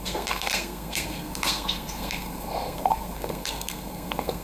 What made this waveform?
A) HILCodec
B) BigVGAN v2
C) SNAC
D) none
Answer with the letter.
C